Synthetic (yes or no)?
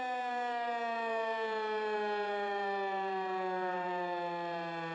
yes